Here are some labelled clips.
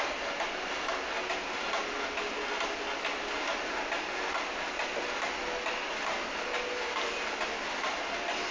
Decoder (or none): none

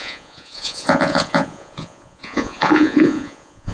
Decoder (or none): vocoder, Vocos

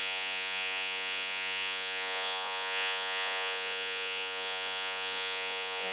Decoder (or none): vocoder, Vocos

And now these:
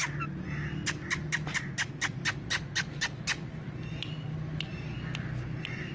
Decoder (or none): none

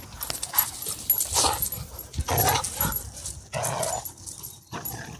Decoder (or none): none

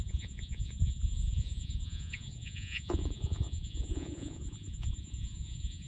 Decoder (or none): vocoder, Vocos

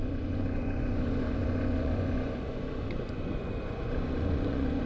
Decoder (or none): vocoder, Vocos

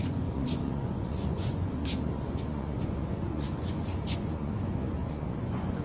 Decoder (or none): vocoder, Vocos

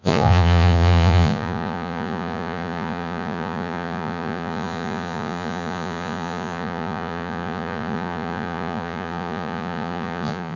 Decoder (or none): vocoder, Vocos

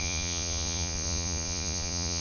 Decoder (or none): vocoder, Vocos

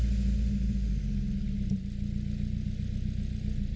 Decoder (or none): none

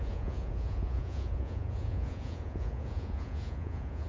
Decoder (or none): vocoder, Vocos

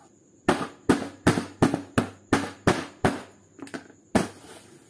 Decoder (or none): none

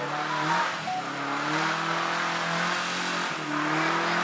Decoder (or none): none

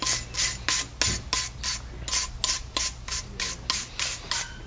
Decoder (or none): none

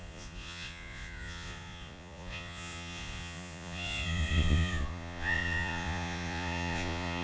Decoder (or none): vocoder, Vocos